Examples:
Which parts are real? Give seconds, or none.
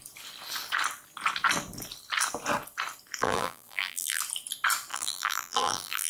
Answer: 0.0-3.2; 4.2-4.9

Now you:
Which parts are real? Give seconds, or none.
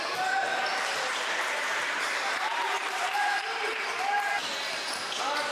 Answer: 0.0-0.7; 4.0-4.4; 5.1-5.5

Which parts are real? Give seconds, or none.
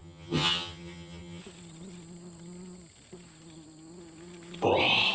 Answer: 1.4-5.1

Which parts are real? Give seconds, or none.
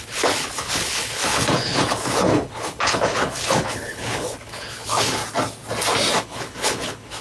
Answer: 5.2-6.2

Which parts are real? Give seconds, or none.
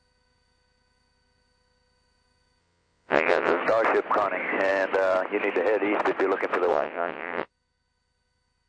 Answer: 0.0-2.6; 3.6-6.7; 7.5-8.7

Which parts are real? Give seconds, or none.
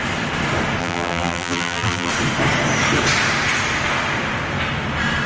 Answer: 0.0-0.8; 2.1-5.3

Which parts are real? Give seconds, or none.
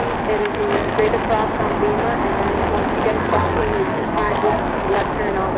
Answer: 0.0-0.4; 1.0-3.1; 4.8-5.6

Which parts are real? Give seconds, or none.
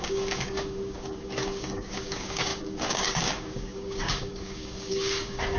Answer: none